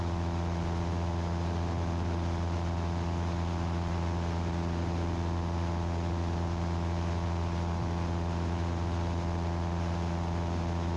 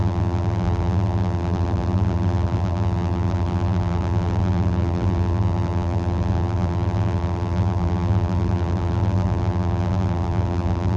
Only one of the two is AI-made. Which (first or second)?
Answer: second